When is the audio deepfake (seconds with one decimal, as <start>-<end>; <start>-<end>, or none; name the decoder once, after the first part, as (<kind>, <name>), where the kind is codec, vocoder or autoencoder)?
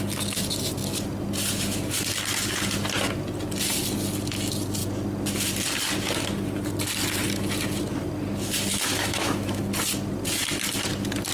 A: 8.7-9.6 (autoencoder, DAC-VAE)